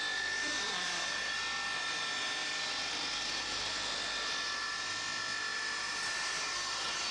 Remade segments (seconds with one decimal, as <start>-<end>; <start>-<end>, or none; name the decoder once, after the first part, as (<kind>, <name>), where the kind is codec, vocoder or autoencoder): none